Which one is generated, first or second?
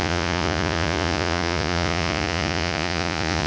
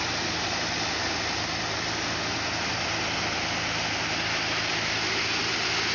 first